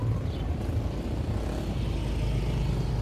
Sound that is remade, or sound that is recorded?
recorded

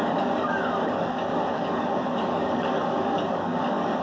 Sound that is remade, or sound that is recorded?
remade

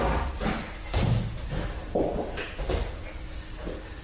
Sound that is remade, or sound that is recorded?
recorded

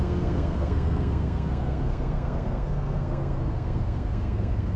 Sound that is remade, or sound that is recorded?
remade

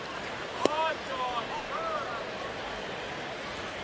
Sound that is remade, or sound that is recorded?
recorded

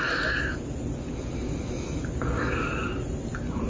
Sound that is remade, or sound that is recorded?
recorded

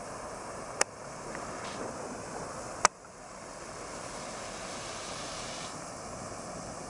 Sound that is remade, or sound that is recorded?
recorded